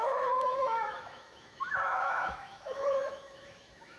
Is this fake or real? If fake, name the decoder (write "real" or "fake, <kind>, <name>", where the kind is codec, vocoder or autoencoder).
fake, autoencoder, DAC-VAE